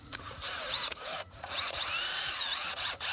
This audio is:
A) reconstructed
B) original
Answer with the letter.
A